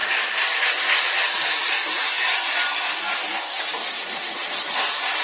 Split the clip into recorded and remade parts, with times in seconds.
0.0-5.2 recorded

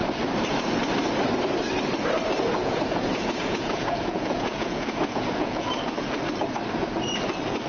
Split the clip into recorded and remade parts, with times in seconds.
0.0-2.6 recorded; 2.6-5.7 remade; 5.7-7.7 recorded